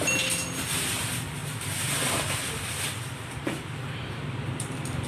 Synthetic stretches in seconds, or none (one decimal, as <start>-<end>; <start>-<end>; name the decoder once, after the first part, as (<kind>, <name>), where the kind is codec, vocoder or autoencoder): 0.0-5.1 (vocoder, BigVGAN v2)